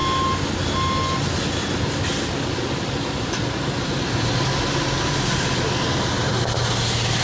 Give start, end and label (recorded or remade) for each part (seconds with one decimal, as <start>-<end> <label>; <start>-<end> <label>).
0.0-7.2 recorded